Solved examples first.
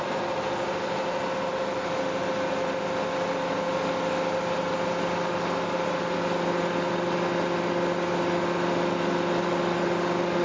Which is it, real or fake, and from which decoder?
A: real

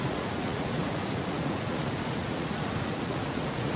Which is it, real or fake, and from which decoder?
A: fake, vocoder, Vocos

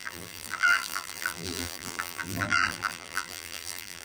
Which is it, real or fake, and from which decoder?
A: fake, vocoder, BigVGAN v2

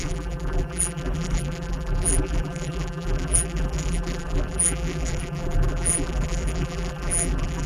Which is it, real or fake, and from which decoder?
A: fake, vocoder, BigVGAN v2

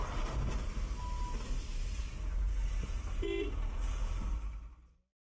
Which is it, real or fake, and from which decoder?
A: real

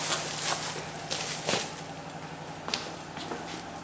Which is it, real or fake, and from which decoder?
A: real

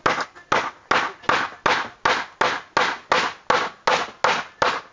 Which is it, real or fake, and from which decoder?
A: real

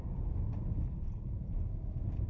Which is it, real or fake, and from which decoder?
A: real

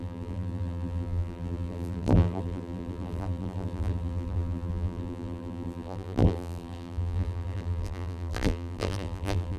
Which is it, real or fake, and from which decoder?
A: fake, vocoder, BigVGAN v2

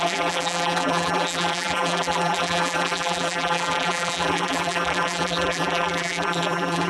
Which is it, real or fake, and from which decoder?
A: fake, vocoder, BigVGAN v2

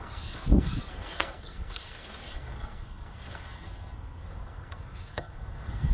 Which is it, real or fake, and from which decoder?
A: fake, codec, SNAC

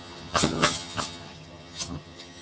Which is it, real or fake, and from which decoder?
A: fake, vocoder, HiFi-GAN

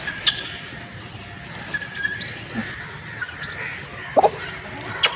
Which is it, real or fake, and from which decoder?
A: real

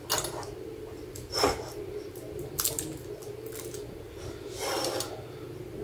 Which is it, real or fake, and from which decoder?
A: real